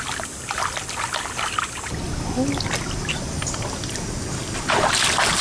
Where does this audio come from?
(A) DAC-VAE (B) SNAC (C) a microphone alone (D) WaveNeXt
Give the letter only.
C